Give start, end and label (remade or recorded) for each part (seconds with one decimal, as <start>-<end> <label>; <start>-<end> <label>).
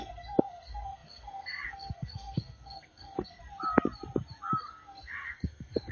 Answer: 0.0-3.4 remade; 3.4-4.6 recorded; 4.6-5.9 remade